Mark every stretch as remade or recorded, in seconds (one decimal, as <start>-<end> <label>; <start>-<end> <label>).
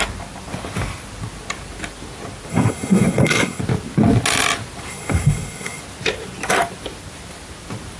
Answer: 0.0-2.5 recorded; 2.5-3.6 remade; 3.6-4.9 recorded; 4.9-5.8 remade; 5.8-8.0 recorded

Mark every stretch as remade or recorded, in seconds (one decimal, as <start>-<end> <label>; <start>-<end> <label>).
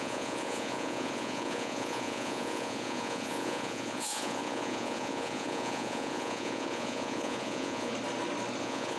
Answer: 0.0-7.9 remade; 7.9-8.6 recorded; 8.6-9.0 remade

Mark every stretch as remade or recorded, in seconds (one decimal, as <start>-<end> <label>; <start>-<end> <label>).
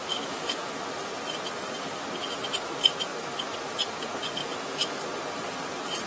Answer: 0.0-0.7 remade; 0.7-4.4 recorded; 4.4-5.0 remade; 5.0-6.1 recorded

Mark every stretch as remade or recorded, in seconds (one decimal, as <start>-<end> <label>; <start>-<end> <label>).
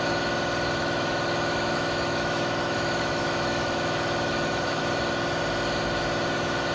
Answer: 0.0-0.8 recorded; 0.8-4.8 remade; 4.8-6.7 recorded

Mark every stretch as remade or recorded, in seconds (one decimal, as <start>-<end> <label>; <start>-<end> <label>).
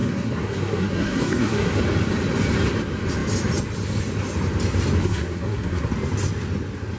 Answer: 0.0-1.8 remade; 1.8-5.0 recorded; 5.0-5.9 remade; 5.9-7.0 recorded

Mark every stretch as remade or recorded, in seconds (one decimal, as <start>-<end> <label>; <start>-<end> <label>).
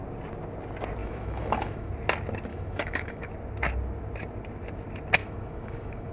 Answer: 0.0-1.0 recorded; 1.0-1.9 remade; 1.9-2.5 recorded; 2.5-3.3 remade; 3.3-5.2 recorded; 5.2-6.1 remade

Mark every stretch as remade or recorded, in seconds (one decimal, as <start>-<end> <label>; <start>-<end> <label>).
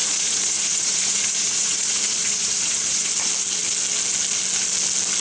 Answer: 0.0-3.1 remade; 3.1-5.2 recorded